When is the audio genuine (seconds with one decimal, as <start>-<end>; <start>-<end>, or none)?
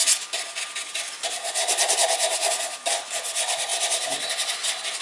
0.0-3.7; 4.5-5.0